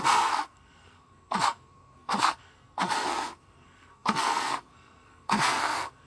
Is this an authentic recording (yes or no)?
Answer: no